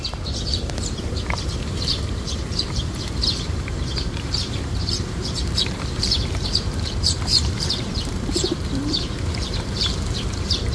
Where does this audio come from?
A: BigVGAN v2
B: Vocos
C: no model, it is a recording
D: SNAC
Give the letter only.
A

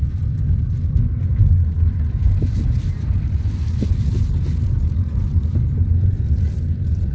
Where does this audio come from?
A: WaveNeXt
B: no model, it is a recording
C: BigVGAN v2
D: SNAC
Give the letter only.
B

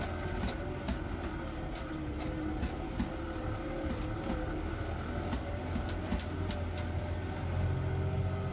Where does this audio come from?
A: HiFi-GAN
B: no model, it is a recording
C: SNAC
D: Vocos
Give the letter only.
B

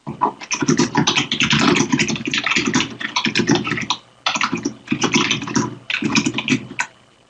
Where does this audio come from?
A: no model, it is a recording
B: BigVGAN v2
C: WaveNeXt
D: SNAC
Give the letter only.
A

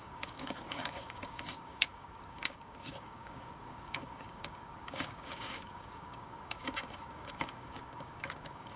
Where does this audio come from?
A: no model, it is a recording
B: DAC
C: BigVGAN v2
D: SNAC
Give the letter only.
B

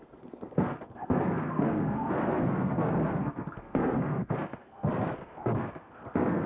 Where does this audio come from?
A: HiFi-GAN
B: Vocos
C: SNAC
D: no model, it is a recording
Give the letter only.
C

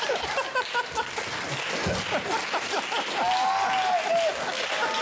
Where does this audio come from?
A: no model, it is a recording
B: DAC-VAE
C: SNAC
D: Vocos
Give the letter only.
A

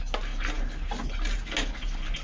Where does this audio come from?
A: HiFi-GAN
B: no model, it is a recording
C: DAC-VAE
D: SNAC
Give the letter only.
B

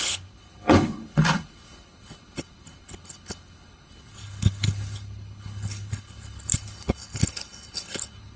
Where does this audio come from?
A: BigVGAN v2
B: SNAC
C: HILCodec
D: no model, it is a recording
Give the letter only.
C